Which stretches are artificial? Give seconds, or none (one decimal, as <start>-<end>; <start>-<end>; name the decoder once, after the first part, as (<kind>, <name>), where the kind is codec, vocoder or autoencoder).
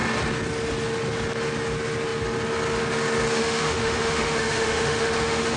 3.4-5.6 (autoencoder, DAC-VAE)